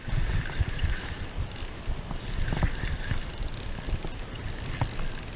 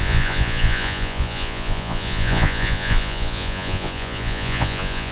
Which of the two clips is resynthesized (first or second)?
second